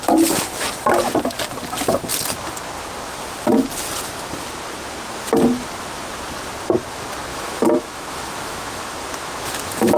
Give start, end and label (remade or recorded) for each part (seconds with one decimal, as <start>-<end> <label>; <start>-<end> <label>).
0.0-7.3 recorded; 7.3-10.0 remade